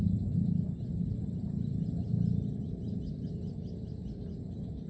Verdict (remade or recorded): recorded